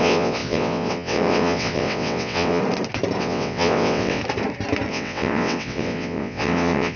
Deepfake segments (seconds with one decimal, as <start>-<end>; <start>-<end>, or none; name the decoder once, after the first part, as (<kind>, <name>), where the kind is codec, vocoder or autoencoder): 0.0-2.6 (vocoder, WaveNeXt); 3.2-4.2; 4.9-7.0